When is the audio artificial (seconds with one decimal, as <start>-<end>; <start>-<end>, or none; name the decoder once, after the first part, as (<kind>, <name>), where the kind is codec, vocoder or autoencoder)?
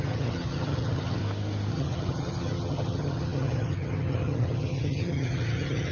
0.0-1.2 (vocoder, HiFi-GAN); 1.7-5.9